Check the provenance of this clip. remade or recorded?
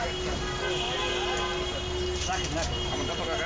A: recorded